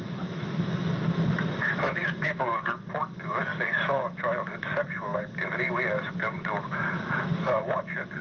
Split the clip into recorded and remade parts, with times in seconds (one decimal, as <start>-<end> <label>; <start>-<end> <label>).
0.0-8.2 remade